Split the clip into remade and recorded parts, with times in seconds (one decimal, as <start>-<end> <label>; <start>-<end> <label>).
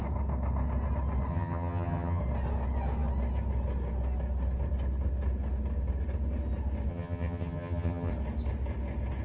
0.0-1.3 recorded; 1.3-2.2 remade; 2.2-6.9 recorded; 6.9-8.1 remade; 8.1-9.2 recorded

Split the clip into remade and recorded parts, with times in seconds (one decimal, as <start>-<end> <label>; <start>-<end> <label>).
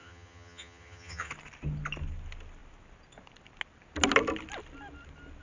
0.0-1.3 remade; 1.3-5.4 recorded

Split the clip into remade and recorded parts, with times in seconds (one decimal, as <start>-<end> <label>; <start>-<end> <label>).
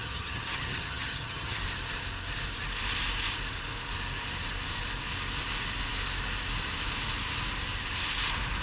0.0-1.6 remade; 1.6-8.6 recorded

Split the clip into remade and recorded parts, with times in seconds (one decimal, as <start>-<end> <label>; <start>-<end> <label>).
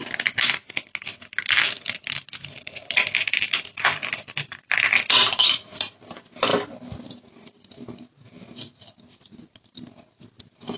0.0-10.8 recorded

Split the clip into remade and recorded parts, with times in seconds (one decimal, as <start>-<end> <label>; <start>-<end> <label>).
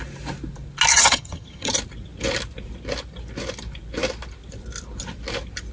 0.0-0.9 recorded; 0.9-1.7 remade; 1.7-5.7 recorded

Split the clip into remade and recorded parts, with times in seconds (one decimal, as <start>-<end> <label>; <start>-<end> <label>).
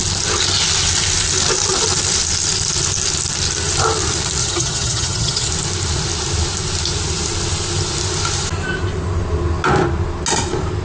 0.0-4.4 recorded; 4.4-5.5 remade; 5.5-10.8 recorded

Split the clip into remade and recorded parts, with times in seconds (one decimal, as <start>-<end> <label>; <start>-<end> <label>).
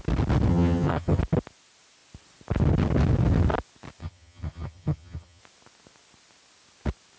0.0-0.5 recorded; 0.5-1.2 remade; 1.2-4.0 recorded; 4.0-5.4 remade; 5.4-7.2 recorded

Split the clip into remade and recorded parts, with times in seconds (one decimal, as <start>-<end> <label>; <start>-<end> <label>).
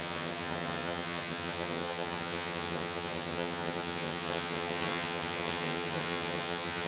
0.0-6.9 remade